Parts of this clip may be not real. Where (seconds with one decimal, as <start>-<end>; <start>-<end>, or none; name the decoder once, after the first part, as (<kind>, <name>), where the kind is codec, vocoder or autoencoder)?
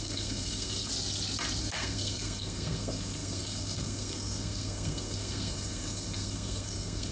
0.0-0.9 (codec, SNAC); 1.6-7.1